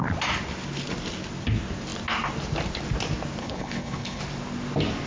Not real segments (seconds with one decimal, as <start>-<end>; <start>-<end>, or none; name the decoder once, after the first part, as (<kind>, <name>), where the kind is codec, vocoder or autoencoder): 3.4-4.2 (codec, HILCodec)